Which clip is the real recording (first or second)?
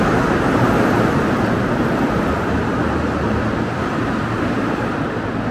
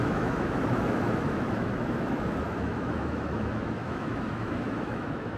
first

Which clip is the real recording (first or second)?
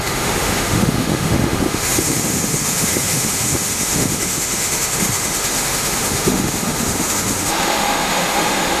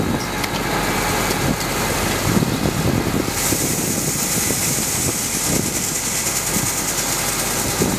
second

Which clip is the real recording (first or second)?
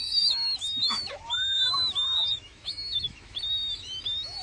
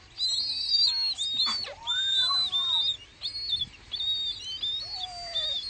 second